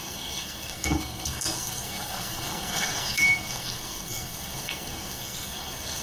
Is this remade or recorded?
remade